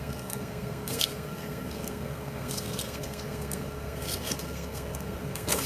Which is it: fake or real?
fake